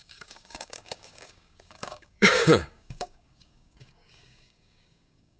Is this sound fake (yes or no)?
yes